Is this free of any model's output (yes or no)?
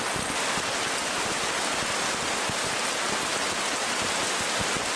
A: yes